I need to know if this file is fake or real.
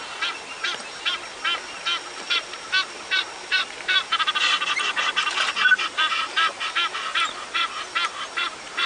real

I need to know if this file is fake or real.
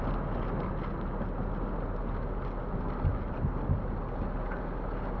real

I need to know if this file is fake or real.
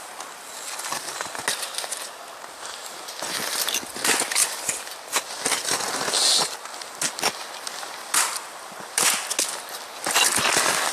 real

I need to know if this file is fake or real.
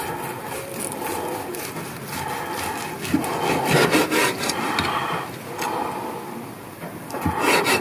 real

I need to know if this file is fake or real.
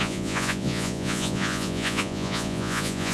fake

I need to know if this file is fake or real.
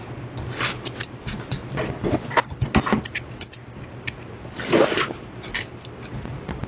real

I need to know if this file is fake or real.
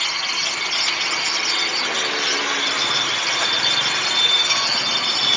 real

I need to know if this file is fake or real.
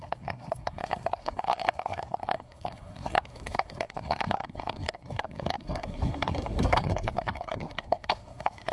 fake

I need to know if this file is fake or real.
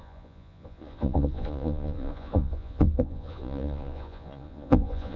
fake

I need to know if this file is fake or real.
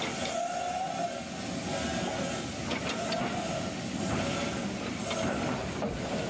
real